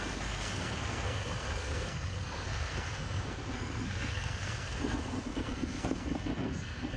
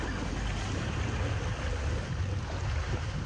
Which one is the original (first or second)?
second